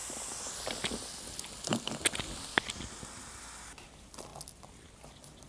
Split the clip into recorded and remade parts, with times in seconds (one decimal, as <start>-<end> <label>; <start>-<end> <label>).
0.0-3.3 recorded; 3.3-4.3 remade; 4.3-5.5 recorded